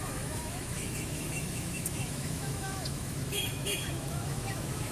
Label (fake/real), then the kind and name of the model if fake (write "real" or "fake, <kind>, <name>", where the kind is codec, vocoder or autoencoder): fake, autoencoder, DAC-VAE